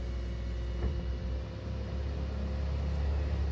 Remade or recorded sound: recorded